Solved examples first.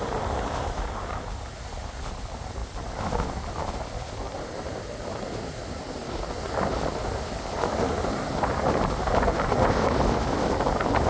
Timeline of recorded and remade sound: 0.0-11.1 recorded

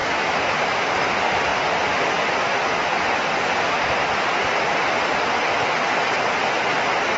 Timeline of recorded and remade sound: 0.0-1.1 remade; 1.1-7.2 recorded

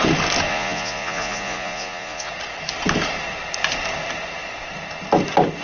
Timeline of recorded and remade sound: 0.0-0.5 recorded; 0.5-2.3 remade; 2.3-5.6 recorded